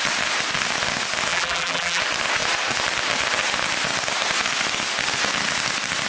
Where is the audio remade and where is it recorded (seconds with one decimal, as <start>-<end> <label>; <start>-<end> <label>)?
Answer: 0.0-1.3 recorded; 1.3-2.0 remade; 2.0-6.1 recorded